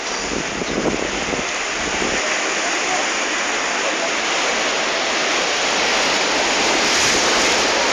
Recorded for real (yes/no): yes